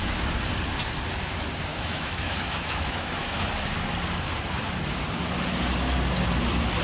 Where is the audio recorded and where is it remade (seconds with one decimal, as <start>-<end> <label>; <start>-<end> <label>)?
0.0-1.7 recorded; 1.7-3.5 remade; 3.5-6.8 recorded